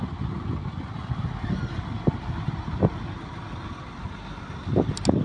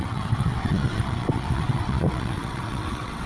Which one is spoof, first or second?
second